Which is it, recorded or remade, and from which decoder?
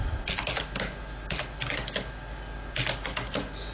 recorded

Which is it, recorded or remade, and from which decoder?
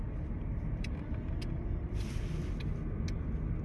recorded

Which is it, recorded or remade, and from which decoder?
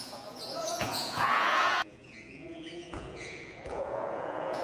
remade, vocoder, Vocos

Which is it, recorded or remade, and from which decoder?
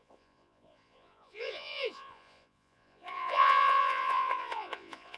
remade, vocoder, Vocos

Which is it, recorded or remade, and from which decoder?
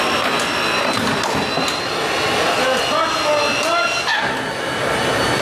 recorded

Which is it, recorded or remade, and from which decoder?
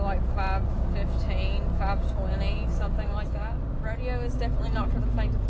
recorded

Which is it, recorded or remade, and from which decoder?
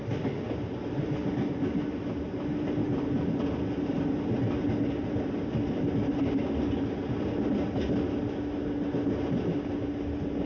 recorded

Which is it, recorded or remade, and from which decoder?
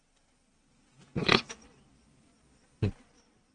recorded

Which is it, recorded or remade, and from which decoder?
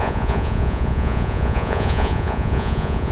remade, vocoder, Vocos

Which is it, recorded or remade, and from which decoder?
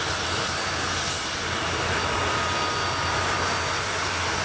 recorded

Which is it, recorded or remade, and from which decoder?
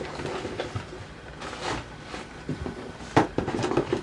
recorded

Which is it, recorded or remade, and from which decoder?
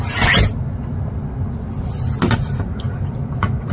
recorded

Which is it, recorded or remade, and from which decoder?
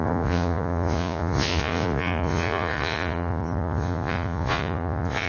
remade, vocoder, Vocos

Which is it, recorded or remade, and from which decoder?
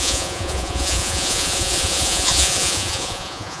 remade, vocoder, Vocos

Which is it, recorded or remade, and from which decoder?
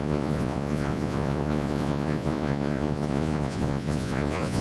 remade, vocoder, Vocos